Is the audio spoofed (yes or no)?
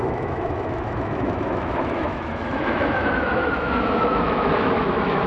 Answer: yes